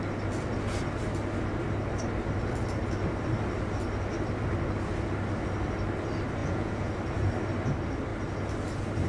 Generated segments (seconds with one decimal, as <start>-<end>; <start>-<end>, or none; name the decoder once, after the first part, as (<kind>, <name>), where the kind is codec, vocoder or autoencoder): 6.4-6.9 (vocoder, Vocos)